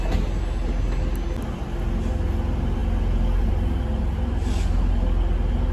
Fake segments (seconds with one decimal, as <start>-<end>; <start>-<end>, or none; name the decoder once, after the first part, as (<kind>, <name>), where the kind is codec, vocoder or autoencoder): none